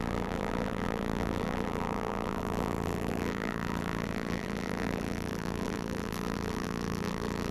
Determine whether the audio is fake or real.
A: fake